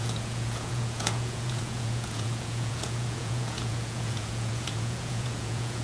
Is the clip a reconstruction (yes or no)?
yes